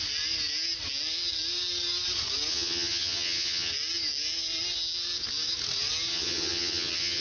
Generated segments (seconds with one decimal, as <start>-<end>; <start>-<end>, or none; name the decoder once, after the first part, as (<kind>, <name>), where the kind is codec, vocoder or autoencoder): 2.5-3.7 (vocoder, HiFi-GAN); 6.1-7.2